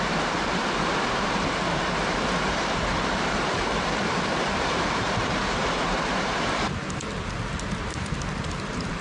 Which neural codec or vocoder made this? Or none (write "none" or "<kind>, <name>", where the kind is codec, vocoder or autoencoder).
vocoder, BigVGAN v2